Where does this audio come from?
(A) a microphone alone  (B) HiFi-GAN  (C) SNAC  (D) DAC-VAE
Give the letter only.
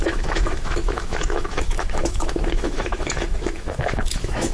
D